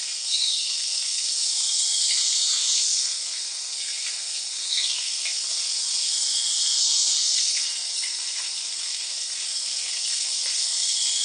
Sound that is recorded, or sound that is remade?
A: remade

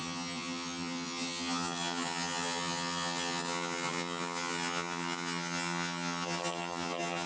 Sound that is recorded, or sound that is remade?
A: remade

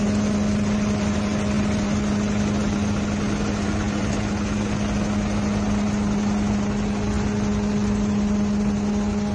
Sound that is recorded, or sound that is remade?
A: recorded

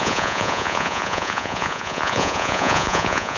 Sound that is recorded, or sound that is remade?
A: remade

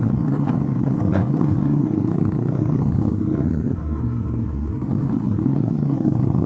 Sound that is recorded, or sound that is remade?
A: remade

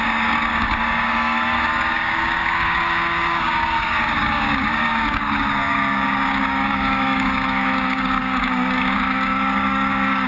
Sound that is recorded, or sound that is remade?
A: remade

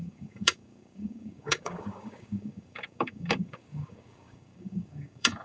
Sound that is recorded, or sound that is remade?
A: remade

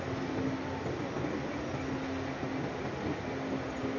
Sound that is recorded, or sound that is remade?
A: recorded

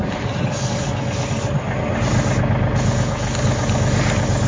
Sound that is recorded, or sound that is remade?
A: recorded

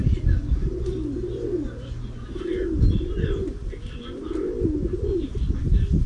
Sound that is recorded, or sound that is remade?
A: recorded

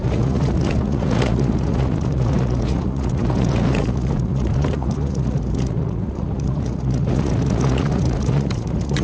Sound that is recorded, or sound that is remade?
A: remade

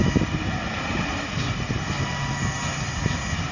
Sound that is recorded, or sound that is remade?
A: recorded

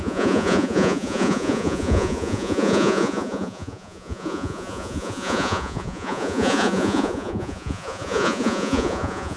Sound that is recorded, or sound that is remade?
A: remade